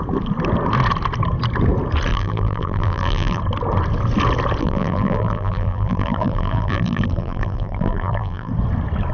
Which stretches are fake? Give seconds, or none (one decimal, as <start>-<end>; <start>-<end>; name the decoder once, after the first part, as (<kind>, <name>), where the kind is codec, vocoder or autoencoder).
2.1-3.4 (vocoder, BigVGAN v2); 4.6-8.5